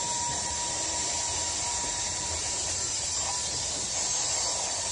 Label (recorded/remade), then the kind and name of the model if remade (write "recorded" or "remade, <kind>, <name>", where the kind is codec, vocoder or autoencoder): recorded